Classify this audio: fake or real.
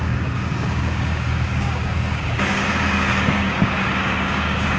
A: fake